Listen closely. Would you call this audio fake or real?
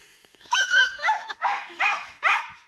fake